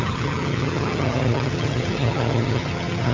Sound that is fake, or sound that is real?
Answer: fake